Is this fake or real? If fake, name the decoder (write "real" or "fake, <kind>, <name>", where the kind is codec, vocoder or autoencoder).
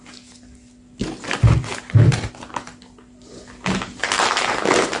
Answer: real